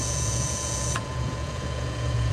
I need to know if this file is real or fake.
fake